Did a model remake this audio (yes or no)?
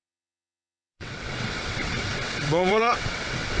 yes